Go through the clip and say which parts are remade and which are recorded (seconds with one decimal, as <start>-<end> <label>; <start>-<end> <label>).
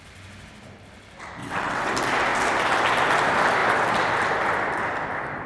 0.0-1.4 recorded; 1.4-1.9 remade; 1.9-5.5 recorded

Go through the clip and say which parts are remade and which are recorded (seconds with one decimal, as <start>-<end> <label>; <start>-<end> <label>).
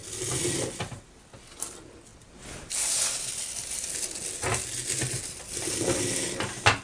0.0-6.8 recorded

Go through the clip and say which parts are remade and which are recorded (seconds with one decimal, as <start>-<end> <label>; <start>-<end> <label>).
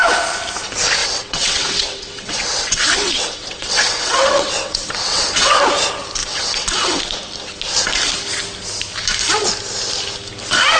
0.0-1.0 recorded; 1.0-5.5 remade; 5.5-6.2 recorded; 6.2-7.0 remade; 7.0-10.8 recorded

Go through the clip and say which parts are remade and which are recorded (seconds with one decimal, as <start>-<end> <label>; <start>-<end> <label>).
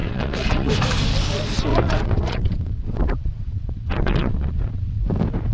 0.0-0.7 remade; 0.7-1.7 recorded; 1.7-5.0 remade; 5.0-5.5 recorded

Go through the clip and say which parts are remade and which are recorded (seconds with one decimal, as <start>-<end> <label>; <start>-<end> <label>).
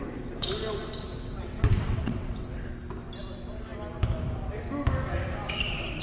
0.0-1.1 recorded; 1.1-2.7 remade; 2.7-6.0 recorded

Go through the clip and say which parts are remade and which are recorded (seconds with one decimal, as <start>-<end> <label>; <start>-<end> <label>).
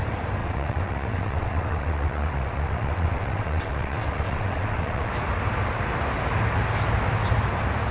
0.0-0.4 recorded; 0.4-5.1 remade; 5.1-7.9 recorded